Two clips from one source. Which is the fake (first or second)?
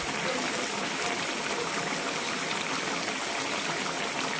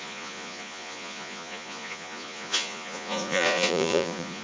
second